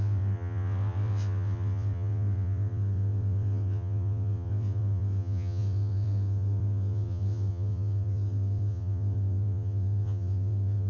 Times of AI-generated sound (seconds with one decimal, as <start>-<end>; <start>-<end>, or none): 0.0-10.9